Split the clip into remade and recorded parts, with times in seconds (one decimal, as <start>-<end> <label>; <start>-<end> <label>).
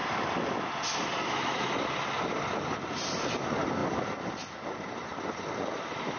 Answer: 0.0-0.6 remade; 0.6-6.2 recorded